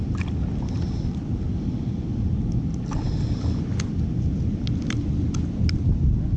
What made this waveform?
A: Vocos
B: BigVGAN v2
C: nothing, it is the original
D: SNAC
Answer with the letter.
C